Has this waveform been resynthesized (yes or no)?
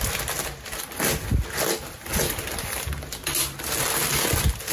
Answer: no